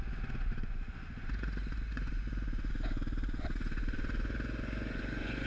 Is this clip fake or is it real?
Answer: fake